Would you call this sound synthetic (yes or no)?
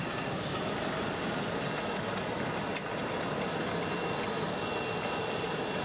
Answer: no